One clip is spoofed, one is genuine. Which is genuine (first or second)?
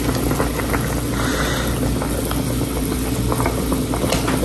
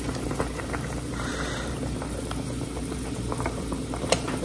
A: first